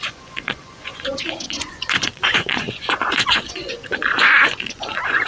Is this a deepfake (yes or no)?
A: yes